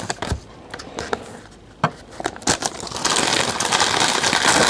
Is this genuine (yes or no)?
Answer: yes